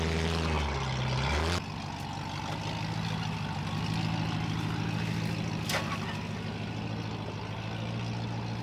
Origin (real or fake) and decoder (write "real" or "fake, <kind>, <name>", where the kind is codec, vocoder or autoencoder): real